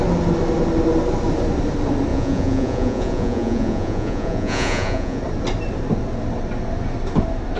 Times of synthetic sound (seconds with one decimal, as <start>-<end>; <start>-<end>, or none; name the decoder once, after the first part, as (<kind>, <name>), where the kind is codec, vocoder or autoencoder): 2.1-5.2 (vocoder, Vocos)